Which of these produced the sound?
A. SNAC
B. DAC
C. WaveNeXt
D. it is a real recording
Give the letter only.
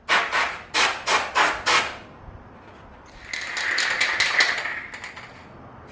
D